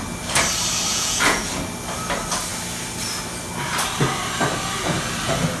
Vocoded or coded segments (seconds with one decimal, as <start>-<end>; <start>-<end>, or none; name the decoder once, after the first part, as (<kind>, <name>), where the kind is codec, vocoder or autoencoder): 0.9-1.5 (vocoder, Vocos)